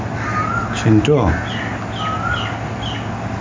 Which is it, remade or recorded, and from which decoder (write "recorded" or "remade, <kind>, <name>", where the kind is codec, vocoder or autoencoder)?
recorded